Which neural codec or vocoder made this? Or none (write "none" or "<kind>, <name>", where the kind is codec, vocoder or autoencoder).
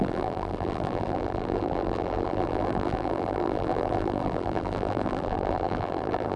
vocoder, BigVGAN v2